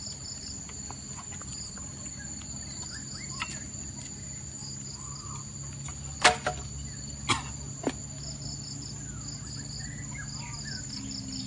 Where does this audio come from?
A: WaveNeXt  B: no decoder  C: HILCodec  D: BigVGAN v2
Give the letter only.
B